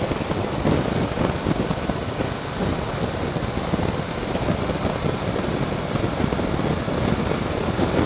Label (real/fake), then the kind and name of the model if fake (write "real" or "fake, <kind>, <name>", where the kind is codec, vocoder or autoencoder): real